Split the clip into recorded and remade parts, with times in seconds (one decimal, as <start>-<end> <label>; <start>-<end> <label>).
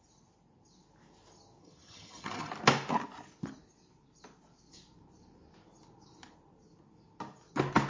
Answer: 0.0-1.6 recorded; 1.6-2.5 remade; 2.5-7.9 recorded